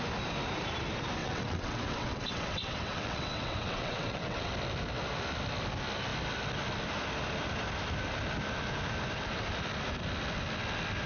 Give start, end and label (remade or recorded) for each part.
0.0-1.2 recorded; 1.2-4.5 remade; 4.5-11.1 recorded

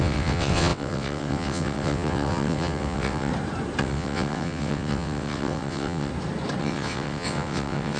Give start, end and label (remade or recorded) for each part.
0.0-3.3 remade; 3.3-3.8 recorded; 3.8-6.1 remade; 6.1-6.6 recorded; 6.6-8.0 remade

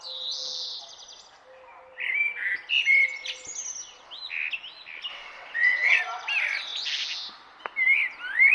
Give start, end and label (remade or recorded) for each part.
0.0-5.1 recorded; 5.1-6.0 remade; 6.0-8.5 recorded